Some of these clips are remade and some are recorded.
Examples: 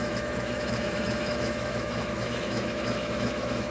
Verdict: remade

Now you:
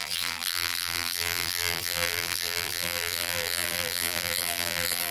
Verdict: remade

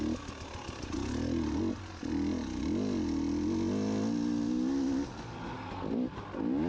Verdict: recorded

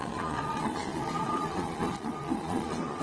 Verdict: remade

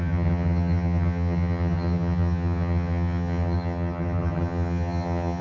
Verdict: remade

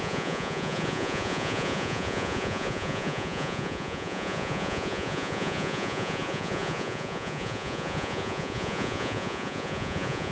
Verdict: remade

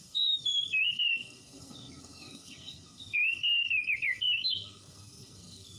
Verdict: remade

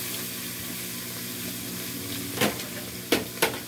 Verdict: recorded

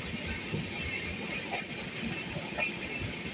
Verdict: recorded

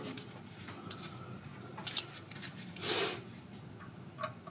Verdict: remade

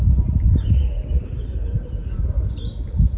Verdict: recorded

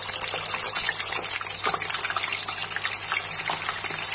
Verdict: recorded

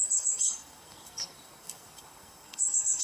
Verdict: remade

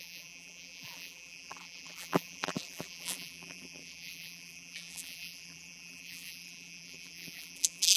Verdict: remade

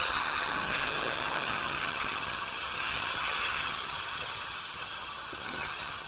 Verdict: remade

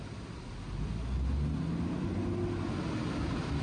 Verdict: recorded